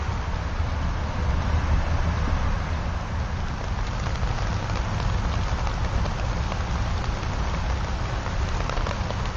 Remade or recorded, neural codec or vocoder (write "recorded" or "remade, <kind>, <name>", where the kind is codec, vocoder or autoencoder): recorded